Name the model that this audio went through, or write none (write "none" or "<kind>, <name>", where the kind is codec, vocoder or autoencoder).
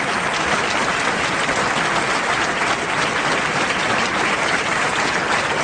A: none